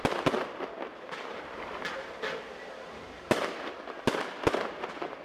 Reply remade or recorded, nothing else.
recorded